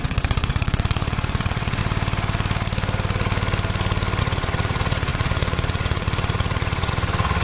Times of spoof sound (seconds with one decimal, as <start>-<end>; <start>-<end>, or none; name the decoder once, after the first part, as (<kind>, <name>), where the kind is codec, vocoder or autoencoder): 0.0-1.8 (vocoder, WaveNeXt); 4.2-7.4